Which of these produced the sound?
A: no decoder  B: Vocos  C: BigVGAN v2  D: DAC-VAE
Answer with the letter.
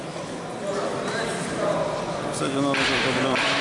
A